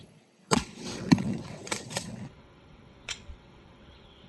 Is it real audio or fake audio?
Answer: fake